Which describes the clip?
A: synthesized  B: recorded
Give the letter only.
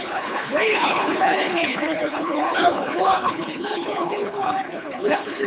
A